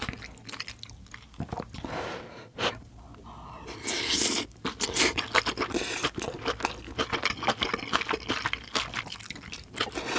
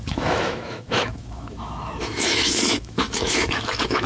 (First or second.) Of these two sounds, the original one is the first